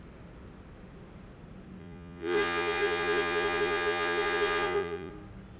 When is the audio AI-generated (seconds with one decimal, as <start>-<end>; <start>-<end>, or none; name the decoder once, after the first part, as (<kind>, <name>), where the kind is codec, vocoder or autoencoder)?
1.8-5.1 (vocoder, Vocos)